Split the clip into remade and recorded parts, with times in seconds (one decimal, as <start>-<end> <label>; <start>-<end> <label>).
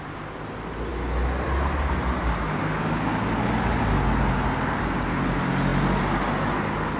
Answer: 0.0-7.0 recorded